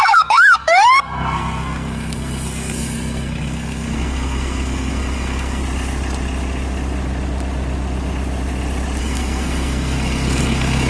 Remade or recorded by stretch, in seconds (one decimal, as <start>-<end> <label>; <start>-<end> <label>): 0.0-5.6 remade; 5.6-9.0 recorded; 9.0-10.9 remade